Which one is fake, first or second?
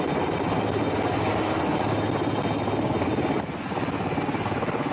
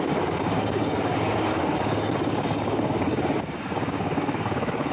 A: second